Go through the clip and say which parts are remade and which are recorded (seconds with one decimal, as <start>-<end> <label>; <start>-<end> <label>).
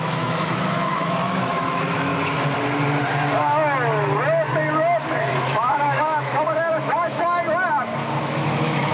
0.0-2.1 remade; 2.1-5.2 recorded; 5.2-7.4 remade; 7.4-8.2 recorded; 8.2-8.9 remade